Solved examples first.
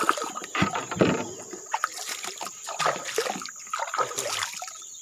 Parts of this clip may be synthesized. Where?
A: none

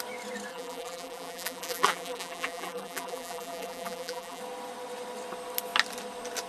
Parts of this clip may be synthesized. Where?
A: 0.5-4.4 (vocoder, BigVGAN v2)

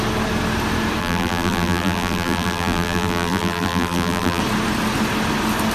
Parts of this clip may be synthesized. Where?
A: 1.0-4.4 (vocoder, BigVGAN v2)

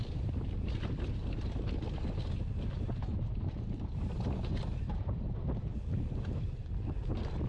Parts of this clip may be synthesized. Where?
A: none

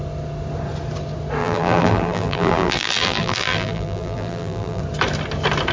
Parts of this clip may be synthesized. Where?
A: 1.4-4.8 (vocoder, BigVGAN v2)